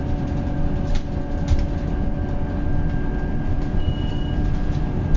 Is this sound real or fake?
real